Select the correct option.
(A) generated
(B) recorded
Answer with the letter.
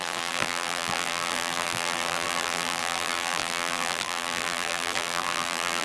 A